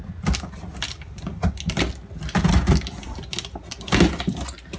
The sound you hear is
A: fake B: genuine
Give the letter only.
B